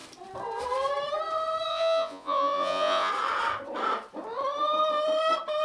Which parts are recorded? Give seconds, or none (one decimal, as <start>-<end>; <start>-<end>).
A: 0.0-1.7; 3.1-5.6